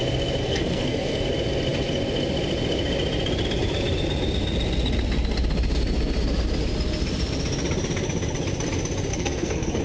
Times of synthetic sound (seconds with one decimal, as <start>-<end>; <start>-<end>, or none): 0.4-1.2; 9.1-9.8